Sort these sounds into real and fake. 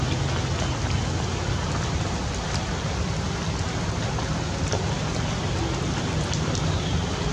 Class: real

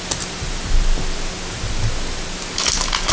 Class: real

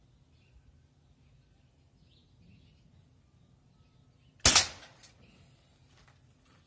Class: real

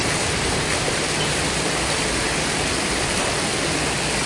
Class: real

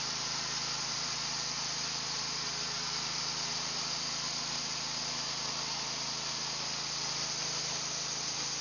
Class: fake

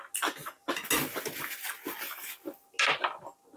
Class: real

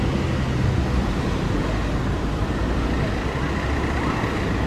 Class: real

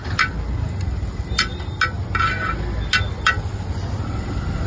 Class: real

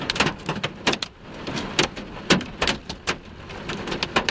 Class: fake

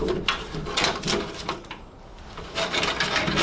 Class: real